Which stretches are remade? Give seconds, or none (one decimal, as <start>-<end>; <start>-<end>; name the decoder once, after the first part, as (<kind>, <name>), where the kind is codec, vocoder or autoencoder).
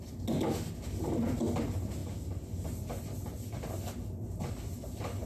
none